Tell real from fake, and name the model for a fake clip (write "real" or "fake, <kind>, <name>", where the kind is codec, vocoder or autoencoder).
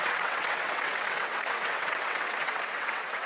fake, vocoder, WaveNeXt